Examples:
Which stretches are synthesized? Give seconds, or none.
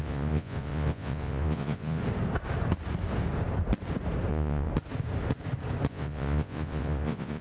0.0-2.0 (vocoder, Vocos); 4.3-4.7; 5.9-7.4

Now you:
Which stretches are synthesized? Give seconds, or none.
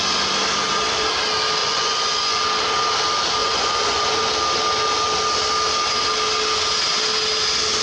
1.6-2.4 (vocoder, Vocos); 3.4-4.3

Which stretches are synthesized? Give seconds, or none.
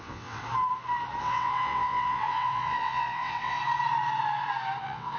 0.0-0.4 (vocoder, WaveNeXt); 1.2-3.6; 4.8-5.2